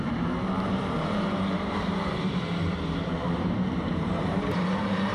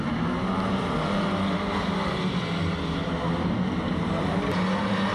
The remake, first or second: first